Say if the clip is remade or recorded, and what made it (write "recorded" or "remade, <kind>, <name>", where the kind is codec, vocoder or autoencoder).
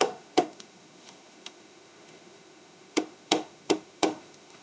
remade, autoencoder, DAC-VAE